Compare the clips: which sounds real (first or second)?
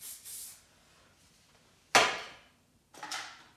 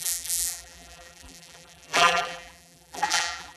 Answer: first